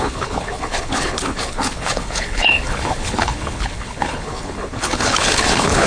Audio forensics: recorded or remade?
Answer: remade